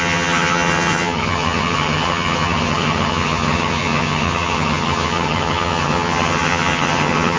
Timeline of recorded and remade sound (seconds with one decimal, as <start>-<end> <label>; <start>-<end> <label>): 0.0-7.4 remade